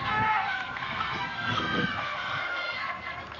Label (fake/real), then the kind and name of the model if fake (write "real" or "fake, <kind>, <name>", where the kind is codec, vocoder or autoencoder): fake, codec, SNAC